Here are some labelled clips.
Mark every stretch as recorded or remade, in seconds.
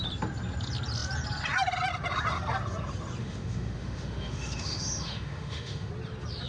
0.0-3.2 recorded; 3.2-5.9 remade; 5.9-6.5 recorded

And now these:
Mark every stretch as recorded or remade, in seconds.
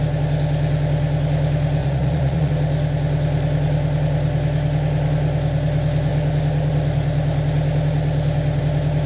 0.0-1.8 recorded; 1.8-2.5 remade; 2.5-9.1 recorded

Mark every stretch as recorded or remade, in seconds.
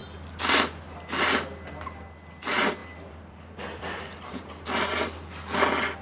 0.0-2.8 recorded; 2.8-4.4 remade; 4.4-6.0 recorded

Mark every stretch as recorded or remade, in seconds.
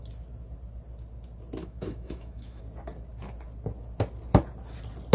0.0-1.6 recorded; 1.6-2.6 remade; 2.6-5.1 recorded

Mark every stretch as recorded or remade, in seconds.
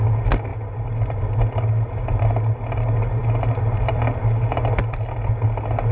0.0-5.9 recorded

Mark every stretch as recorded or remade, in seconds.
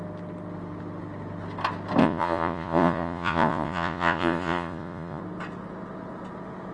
0.0-2.0 recorded; 2.0-5.2 remade; 5.2-6.7 recorded